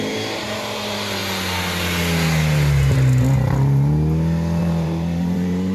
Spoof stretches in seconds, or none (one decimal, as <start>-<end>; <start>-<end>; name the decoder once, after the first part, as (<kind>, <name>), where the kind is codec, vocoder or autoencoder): 0.0-1.2 (vocoder, BigVGAN v2); 4.6-5.7